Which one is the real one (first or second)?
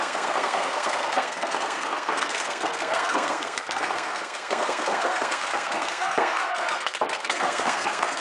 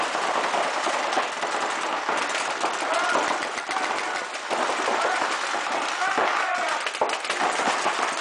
second